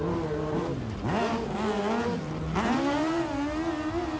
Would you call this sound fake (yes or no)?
no